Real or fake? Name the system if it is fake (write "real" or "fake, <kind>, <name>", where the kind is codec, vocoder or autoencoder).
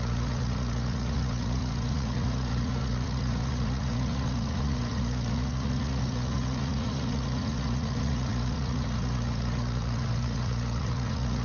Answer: fake, vocoder, Vocos